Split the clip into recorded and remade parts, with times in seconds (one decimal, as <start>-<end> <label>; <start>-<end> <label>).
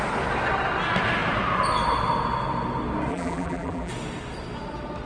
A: 0.0-3.1 recorded; 3.1-3.9 remade; 3.9-5.1 recorded